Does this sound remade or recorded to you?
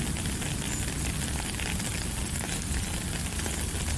recorded